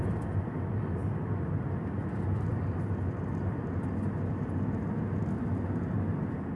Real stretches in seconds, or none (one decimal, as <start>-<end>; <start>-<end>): 0.0-6.6